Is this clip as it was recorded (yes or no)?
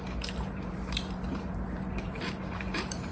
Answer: no